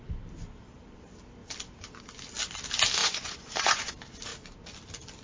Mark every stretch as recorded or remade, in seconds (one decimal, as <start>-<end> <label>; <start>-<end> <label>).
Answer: 0.0-3.0 recorded; 3.0-3.9 remade; 3.9-5.2 recorded